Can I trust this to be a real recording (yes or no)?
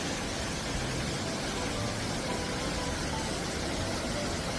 yes